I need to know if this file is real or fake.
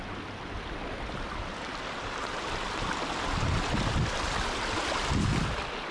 real